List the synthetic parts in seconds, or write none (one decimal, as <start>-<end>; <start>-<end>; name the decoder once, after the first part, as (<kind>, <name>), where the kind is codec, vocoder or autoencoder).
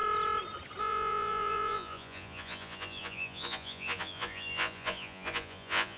0.8-6.0 (vocoder, Vocos)